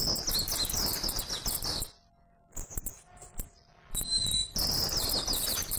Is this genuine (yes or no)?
yes